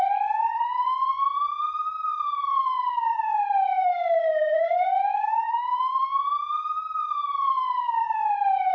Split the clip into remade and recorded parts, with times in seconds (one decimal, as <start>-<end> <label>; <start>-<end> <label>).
0.0-3.7 recorded; 3.7-6.2 remade; 6.2-8.7 recorded